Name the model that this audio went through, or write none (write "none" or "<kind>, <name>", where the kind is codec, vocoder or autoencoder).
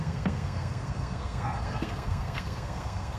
codec, SNAC